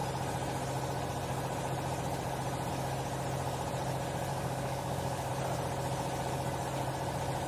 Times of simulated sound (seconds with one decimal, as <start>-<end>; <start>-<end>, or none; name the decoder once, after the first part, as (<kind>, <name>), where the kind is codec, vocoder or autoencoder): 4.3-5.3 (codec, DAC)